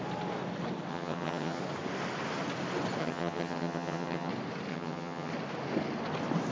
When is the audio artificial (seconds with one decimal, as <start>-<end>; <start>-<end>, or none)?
0.9-1.6; 3.0-4.3; 4.7-5.3